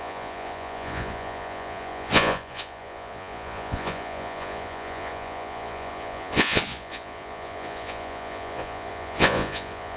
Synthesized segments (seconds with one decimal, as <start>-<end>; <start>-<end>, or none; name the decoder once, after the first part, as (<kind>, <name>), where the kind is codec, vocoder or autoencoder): 0.0-10.0 (vocoder, Vocos)